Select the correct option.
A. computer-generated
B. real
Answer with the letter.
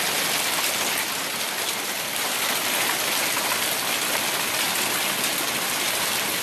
B